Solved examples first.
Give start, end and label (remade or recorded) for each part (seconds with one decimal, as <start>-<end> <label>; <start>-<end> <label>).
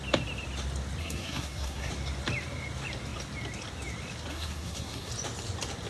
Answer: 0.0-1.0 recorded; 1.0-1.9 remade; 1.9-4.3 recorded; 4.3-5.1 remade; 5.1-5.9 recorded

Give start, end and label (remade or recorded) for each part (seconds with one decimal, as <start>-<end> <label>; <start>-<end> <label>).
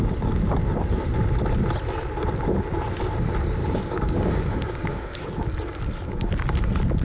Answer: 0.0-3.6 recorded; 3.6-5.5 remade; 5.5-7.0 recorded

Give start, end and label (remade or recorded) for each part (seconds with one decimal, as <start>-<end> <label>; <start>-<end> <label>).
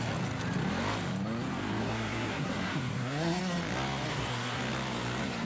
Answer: 0.0-1.8 recorded; 1.8-3.4 remade; 3.4-4.1 recorded; 4.1-4.6 remade; 4.6-5.4 recorded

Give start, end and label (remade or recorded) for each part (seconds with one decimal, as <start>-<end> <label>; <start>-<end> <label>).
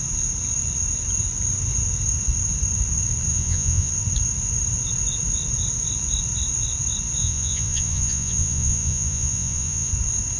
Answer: 0.0-3.3 recorded; 3.3-3.9 remade; 3.9-7.2 recorded; 7.2-9.9 remade; 9.9-10.4 recorded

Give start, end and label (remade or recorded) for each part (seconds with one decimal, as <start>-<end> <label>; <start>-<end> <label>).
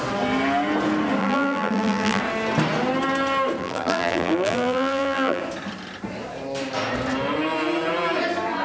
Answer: 0.0-1.2 recorded; 1.2-2.2 remade; 2.2-3.6 recorded; 3.6-5.4 remade; 5.4-8.6 recorded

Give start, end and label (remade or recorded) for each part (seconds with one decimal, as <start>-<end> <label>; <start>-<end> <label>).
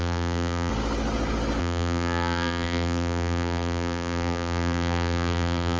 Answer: 0.0-0.7 remade; 0.7-1.6 recorded; 1.6-5.8 remade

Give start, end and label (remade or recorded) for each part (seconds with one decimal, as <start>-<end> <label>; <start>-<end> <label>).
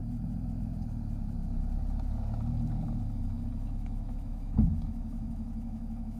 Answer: 0.0-3.7 recorded; 3.7-6.2 remade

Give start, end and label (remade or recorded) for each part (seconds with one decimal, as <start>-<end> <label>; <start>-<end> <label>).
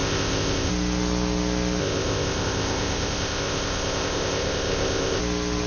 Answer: 0.0-0.7 remade; 0.7-1.8 recorded; 1.8-5.2 remade; 5.2-5.7 recorded